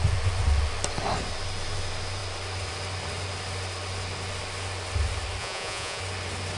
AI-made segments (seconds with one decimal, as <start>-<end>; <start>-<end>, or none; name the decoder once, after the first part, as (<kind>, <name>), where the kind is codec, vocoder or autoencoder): 5.4-6.0 (vocoder, Vocos)